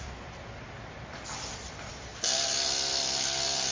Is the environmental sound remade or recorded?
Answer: recorded